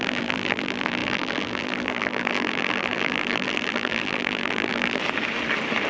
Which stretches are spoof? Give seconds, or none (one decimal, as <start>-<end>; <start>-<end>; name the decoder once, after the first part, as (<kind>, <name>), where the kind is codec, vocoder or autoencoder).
0.0-5.0 (vocoder, BigVGAN v2)